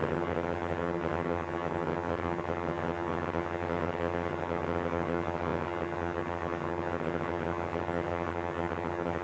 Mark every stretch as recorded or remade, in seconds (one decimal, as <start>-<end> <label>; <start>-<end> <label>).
0.0-9.2 remade